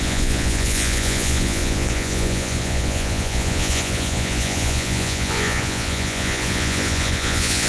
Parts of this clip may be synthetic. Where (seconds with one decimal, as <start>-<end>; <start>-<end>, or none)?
0.0-7.7